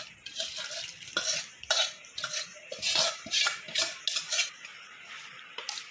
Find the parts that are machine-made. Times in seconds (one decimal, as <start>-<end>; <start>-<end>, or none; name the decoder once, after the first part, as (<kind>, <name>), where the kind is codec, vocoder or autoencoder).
2.5-4.0 (vocoder, BigVGAN v2)